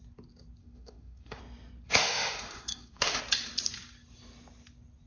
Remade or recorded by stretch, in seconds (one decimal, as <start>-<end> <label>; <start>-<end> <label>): 0.0-0.6 recorded; 0.6-1.4 remade; 1.4-1.9 recorded; 1.9-3.2 remade; 3.2-5.1 recorded